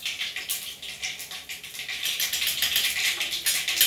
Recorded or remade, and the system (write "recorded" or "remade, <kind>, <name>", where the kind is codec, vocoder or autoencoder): recorded